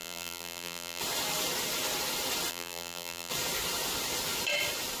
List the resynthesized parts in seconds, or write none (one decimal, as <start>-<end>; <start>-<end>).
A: 0.0-1.0; 2.5-3.3